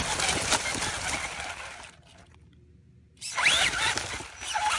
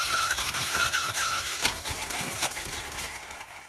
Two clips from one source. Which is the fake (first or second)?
second